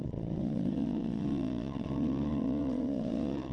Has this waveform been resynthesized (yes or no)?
yes